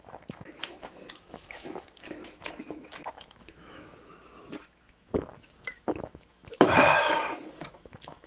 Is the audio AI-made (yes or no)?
yes